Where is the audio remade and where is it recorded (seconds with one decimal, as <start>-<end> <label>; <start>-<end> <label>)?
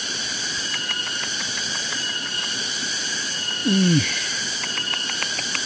0.0-5.7 recorded